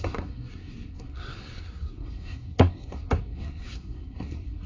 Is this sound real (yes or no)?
no